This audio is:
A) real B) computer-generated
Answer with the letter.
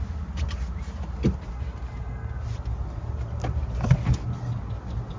A